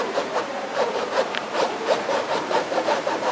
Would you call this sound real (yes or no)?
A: no